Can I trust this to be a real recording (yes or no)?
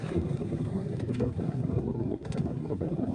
no